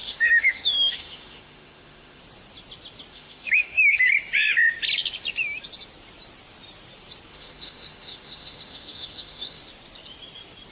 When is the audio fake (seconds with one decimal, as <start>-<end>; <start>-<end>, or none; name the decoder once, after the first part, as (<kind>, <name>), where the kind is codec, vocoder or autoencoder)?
0.0-2.2 (autoencoder, DAC-VAE); 3.1-4.0; 7.3-9.6